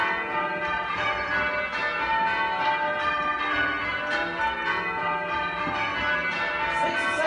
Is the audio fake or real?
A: real